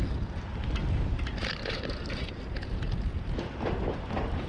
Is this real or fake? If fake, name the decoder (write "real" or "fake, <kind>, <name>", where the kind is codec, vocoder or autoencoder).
real